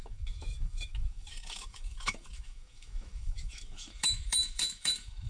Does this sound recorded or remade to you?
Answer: remade